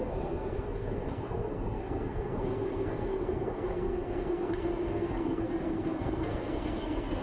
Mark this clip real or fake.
fake